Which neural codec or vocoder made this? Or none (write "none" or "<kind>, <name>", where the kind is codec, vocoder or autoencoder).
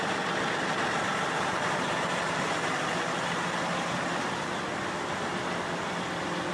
none